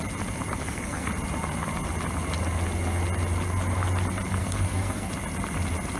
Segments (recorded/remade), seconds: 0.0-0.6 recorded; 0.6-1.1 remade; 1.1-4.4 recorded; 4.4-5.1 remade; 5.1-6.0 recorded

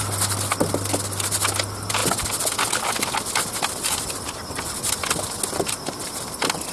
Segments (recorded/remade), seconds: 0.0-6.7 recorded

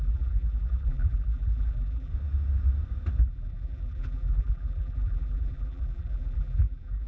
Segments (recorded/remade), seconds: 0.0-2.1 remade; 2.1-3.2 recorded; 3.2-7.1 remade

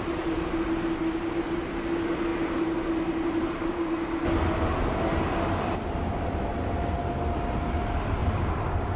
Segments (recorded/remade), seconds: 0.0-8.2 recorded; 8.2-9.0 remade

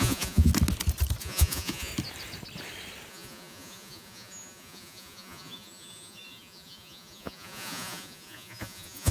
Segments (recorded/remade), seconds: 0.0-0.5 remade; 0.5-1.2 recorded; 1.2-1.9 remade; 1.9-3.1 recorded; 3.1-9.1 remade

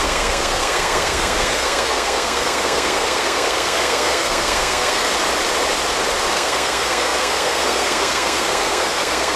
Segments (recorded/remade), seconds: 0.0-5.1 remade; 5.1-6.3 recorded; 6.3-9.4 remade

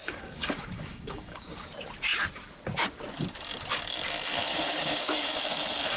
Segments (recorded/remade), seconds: 0.0-1.7 remade; 1.7-4.5 recorded; 4.5-5.4 remade; 5.4-6.0 recorded